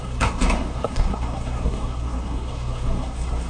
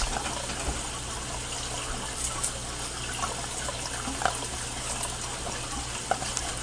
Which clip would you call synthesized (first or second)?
first